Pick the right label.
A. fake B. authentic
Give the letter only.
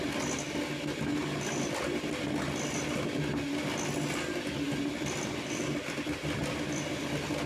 B